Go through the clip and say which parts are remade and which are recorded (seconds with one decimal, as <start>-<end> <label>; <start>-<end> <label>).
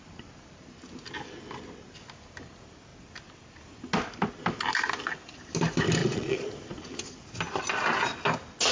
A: 0.0-6.0 recorded; 6.0-6.5 remade; 6.5-8.7 recorded